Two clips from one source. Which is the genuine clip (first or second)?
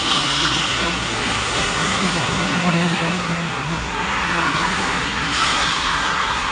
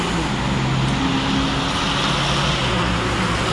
second